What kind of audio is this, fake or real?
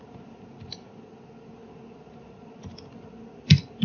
real